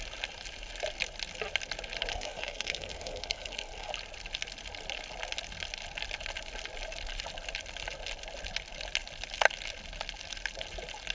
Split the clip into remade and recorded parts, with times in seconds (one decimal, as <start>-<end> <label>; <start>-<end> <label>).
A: 0.0-2.1 recorded; 2.1-3.9 remade; 3.9-11.1 recorded